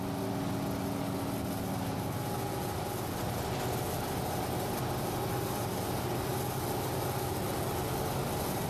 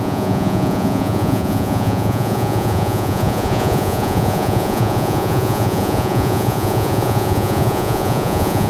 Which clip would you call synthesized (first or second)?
second